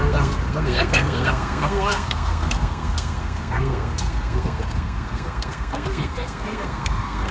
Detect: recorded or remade remade